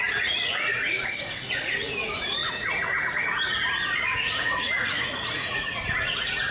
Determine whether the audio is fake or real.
fake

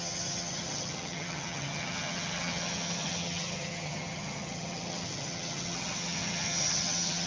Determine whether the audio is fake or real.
fake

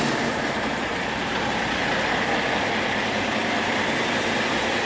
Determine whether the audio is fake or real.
real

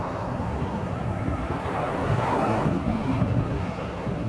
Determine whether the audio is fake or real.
fake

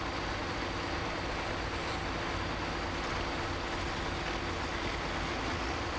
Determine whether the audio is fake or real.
real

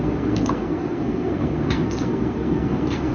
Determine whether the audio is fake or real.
fake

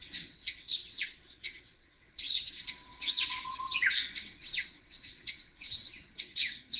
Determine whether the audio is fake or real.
fake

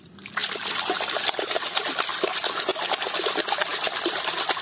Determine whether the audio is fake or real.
real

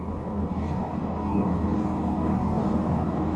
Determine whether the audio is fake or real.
fake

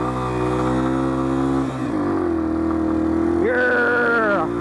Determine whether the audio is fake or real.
real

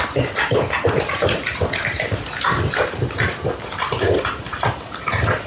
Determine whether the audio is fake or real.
real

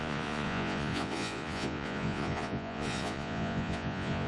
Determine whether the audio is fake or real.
fake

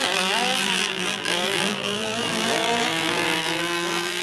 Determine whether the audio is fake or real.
fake